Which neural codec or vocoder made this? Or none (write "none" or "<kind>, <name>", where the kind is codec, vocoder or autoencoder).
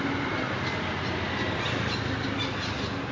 none